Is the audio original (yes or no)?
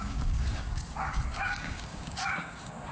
no